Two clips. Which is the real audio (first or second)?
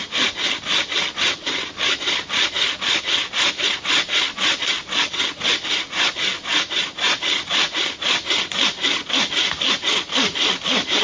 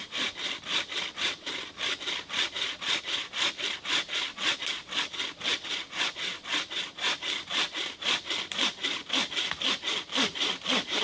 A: first